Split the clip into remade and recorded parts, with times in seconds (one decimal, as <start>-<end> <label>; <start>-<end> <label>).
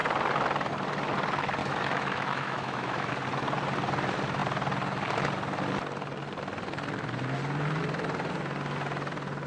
0.0-1.6 recorded; 1.6-3.1 remade; 3.1-9.5 recorded